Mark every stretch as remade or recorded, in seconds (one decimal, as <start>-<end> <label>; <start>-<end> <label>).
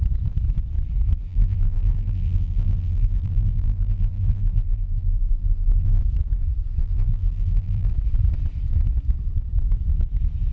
0.0-1.3 recorded; 1.3-6.0 remade; 6.0-6.8 recorded; 6.8-7.9 remade; 7.9-10.5 recorded